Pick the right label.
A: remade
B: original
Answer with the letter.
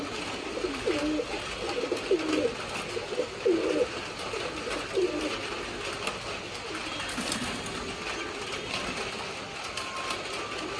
B